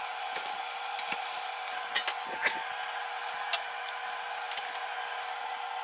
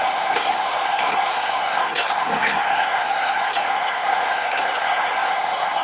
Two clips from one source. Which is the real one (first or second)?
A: first